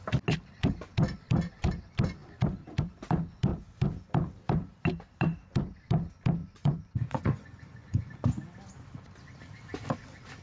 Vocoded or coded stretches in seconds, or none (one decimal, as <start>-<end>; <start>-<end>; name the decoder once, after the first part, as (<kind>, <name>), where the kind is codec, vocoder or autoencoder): 6.4-8.1 (vocoder, Vocos)